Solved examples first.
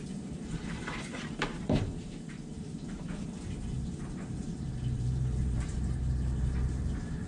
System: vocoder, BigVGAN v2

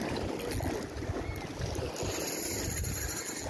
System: none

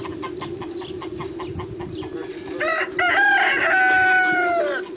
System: none